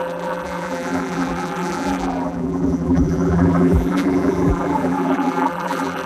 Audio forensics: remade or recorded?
remade